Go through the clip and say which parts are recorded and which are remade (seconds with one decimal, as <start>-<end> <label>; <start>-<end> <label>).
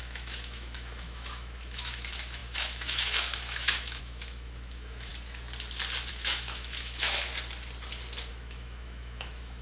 0.0-5.1 remade; 5.1-6.1 recorded; 6.1-7.3 remade; 7.3-8.3 recorded; 8.3-9.6 remade